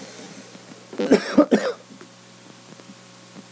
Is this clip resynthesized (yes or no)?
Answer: no